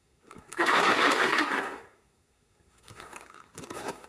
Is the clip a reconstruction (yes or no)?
yes